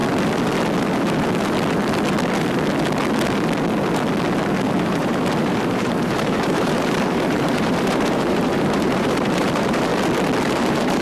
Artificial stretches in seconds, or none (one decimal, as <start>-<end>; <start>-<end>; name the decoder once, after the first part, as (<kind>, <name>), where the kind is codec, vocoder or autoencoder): 4.8-9.9 (vocoder, BigVGAN v2); 10.4-11.0